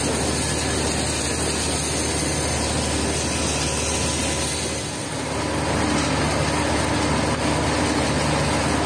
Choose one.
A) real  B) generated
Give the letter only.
A